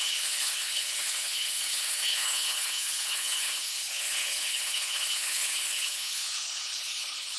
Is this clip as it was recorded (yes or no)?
no